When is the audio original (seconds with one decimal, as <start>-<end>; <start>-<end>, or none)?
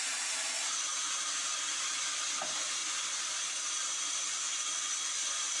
0.0-5.6